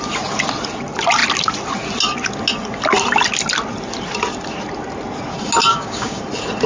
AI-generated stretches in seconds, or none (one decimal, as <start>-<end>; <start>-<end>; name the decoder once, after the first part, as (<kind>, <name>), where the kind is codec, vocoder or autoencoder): 5.7-6.2 (codec, DAC)